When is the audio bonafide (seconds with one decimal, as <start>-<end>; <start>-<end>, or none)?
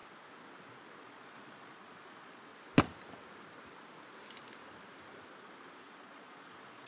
0.0-1.0; 2.5-5.7